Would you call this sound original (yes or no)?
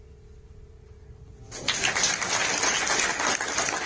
yes